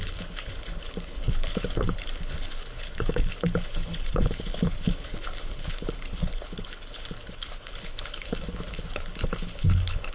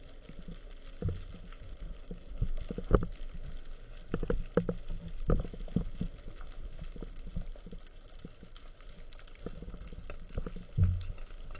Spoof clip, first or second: first